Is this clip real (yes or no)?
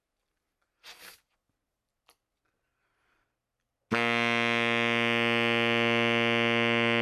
yes